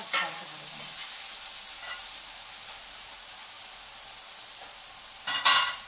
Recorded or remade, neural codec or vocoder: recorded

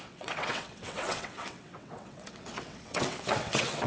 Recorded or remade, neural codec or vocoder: remade, vocoder, WaveNeXt